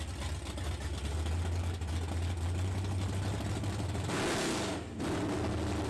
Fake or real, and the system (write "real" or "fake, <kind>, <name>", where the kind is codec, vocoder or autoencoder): real